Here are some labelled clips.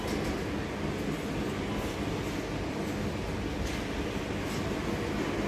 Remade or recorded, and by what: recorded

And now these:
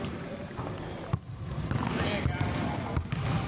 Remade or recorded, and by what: recorded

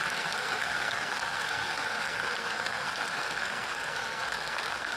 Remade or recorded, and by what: remade, codec, SNAC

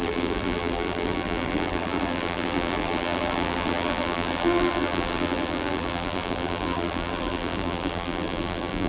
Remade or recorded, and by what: remade, vocoder, BigVGAN v2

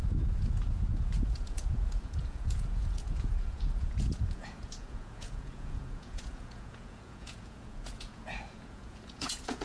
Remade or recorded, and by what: remade, vocoder, Vocos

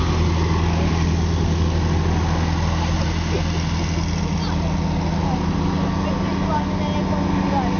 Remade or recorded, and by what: recorded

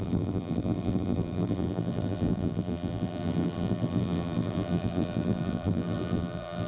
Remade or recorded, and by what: remade, vocoder, BigVGAN v2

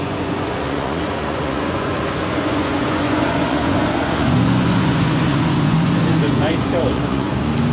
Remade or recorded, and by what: remade, vocoder, Vocos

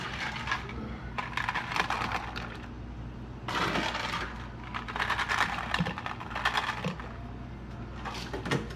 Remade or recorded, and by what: recorded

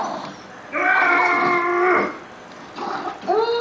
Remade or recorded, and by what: recorded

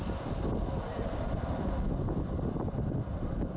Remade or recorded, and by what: recorded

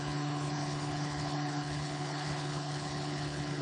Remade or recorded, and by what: remade, codec, HILCodec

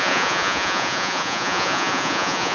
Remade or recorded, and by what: remade, vocoder, Vocos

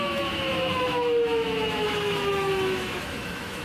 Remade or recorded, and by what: remade, autoencoder, DAC-VAE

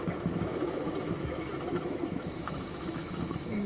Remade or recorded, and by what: remade, autoencoder, DAC-VAE